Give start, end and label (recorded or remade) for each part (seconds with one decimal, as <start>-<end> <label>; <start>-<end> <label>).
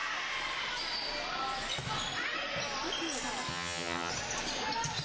0.0-3.5 recorded; 3.5-4.1 remade; 4.1-5.0 recorded